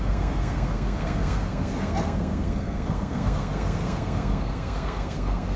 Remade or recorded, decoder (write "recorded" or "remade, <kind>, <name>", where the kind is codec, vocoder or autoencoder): remade, codec, SNAC